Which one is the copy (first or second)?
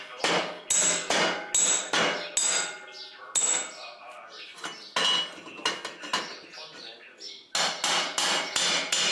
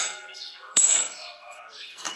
second